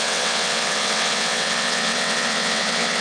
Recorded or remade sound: remade